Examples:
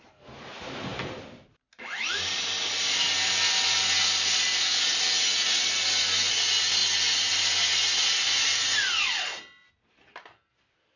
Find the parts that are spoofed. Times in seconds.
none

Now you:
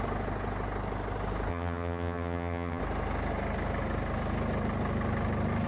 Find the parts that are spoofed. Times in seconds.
1.5-2.8

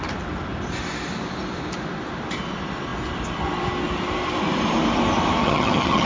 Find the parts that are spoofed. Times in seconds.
5.4-6.1

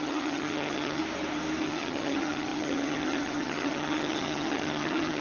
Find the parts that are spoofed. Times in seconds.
0.0-1.0; 1.6-5.2

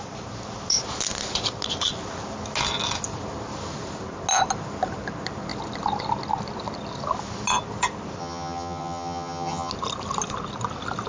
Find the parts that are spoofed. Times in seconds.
8.2-9.7

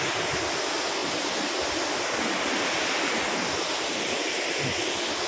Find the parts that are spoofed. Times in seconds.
none

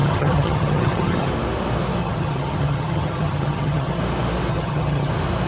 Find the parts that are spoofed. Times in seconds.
0.0-1.3; 2.0-4.0; 4.5-5.1